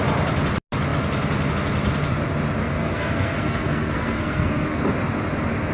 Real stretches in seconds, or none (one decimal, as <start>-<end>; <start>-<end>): 0.0-2.6; 4.8-5.7